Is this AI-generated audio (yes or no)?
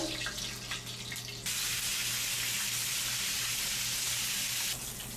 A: no